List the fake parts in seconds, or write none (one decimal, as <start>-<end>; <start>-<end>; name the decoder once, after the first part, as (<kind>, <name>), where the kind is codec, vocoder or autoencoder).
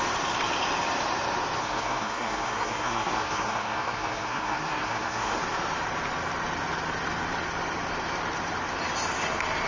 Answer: 1.6-5.4 (codec, SNAC)